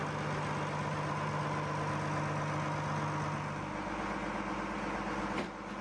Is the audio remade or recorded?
recorded